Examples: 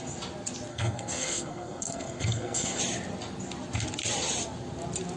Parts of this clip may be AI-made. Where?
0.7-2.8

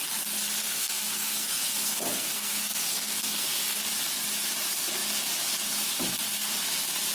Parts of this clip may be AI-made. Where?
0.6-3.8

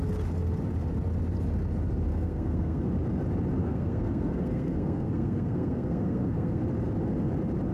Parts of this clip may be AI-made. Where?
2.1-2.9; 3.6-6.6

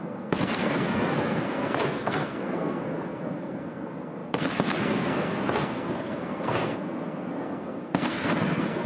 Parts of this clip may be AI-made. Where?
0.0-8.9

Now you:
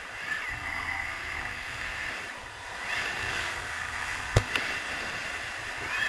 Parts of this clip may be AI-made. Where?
0.5-2.1; 3.2-4.5